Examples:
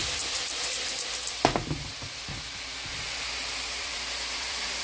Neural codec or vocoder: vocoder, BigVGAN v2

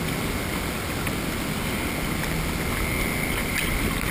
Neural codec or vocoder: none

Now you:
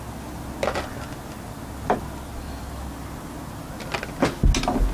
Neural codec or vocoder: none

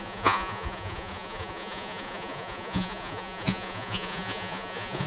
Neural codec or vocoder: vocoder, Vocos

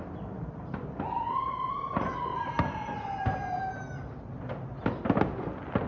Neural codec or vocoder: none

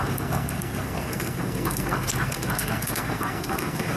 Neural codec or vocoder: codec, SNAC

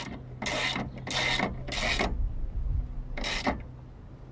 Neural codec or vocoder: none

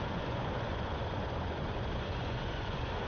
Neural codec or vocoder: vocoder, Vocos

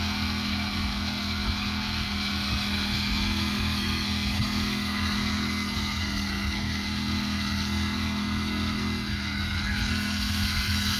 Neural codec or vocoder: codec, SNAC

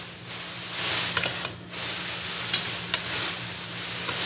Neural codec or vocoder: none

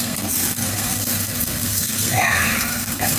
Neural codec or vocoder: codec, SNAC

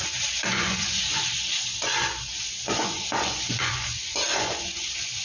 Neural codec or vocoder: vocoder, Vocos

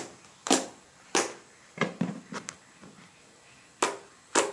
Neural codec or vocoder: none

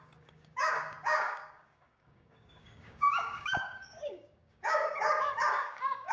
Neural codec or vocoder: codec, DAC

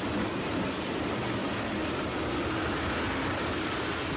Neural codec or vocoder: none